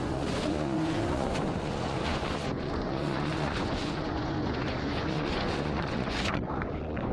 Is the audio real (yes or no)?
no